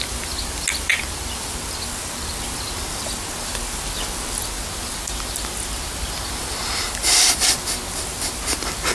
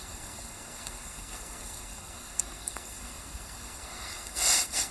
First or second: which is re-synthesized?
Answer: second